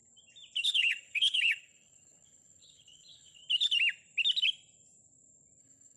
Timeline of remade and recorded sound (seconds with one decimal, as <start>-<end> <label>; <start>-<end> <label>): 0.0-0.6 recorded; 0.6-3.4 remade; 3.4-5.6 recorded; 5.6-6.0 remade